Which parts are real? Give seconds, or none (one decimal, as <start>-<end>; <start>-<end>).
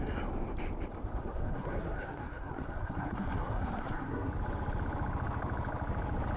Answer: 0.0-1.2; 4.3-6.4